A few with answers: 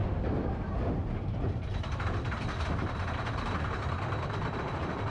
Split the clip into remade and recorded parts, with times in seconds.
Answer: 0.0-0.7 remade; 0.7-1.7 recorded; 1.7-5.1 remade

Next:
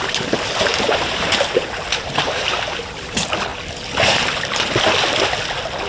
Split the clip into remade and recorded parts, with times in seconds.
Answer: 0.0-0.7 recorded; 0.7-2.6 remade; 2.6-5.9 recorded

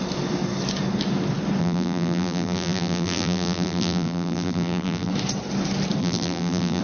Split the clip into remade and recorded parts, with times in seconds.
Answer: 0.0-1.6 recorded; 1.6-5.1 remade; 5.1-6.0 recorded; 6.0-6.8 remade

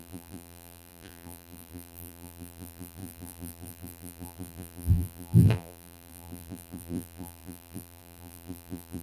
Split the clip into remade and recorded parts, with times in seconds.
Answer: 0.0-9.0 remade

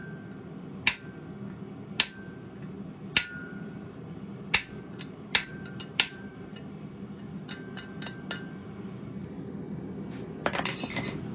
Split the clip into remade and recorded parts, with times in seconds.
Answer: 0.0-3.4 recorded; 3.4-6.9 remade; 6.9-11.3 recorded